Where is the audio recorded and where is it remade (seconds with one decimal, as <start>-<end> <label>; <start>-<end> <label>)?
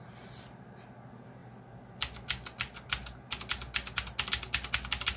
0.0-5.2 recorded